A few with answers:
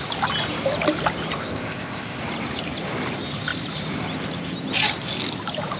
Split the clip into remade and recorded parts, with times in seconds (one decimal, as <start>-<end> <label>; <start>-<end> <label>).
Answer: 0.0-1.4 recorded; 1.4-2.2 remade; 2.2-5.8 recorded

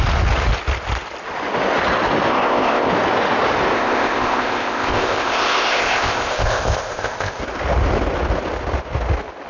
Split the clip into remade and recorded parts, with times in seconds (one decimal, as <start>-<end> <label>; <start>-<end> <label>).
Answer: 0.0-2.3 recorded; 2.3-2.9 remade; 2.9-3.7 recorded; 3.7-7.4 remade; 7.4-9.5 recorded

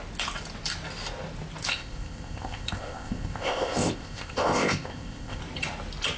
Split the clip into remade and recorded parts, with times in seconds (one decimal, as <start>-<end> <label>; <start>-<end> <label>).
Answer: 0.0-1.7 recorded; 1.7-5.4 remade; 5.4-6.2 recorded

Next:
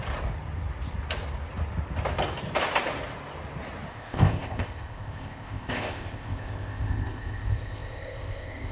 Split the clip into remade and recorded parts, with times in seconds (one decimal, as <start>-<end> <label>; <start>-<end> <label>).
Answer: 0.0-3.9 recorded; 3.9-8.7 remade

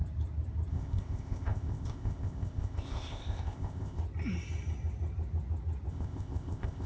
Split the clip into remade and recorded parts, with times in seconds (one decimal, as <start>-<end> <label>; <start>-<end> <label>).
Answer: 0.0-0.7 recorded; 0.7-4.0 remade; 4.0-5.9 recorded; 5.9-6.9 remade

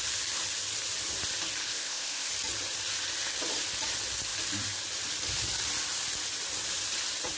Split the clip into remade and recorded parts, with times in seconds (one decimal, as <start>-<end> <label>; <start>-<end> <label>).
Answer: 0.0-1.6 recorded; 1.6-2.3 remade; 2.3-7.4 recorded

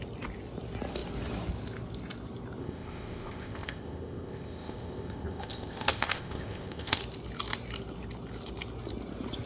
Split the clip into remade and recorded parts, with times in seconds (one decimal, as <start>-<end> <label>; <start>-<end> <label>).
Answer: 0.0-2.6 recorded; 2.6-7.0 remade; 7.0-9.5 recorded